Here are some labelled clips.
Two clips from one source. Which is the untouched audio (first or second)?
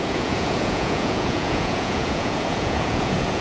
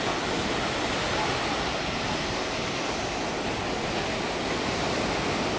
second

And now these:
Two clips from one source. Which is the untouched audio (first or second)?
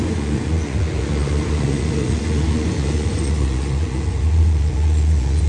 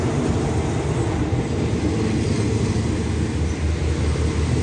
second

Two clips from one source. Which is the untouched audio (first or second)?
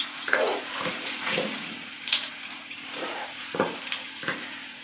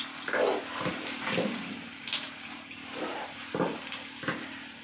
second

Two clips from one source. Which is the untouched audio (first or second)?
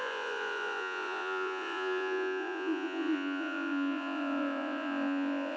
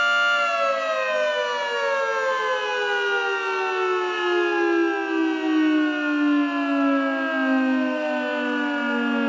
second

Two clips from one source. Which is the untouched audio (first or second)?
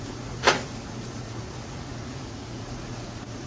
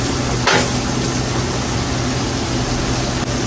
second